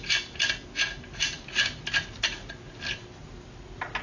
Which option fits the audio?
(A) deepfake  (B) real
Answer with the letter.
B